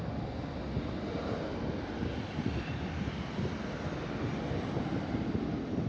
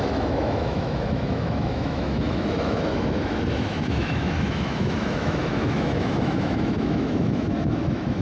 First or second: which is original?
first